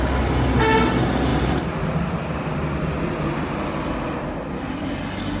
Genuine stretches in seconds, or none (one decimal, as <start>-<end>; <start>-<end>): 0.0-5.4